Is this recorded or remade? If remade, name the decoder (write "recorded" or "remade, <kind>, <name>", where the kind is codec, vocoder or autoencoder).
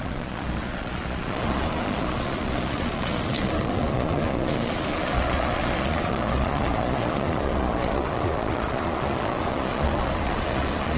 remade, vocoder, Vocos